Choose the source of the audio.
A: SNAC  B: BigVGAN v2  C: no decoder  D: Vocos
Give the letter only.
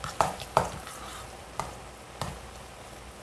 C